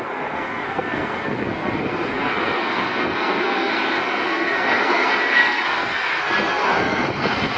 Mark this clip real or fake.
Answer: fake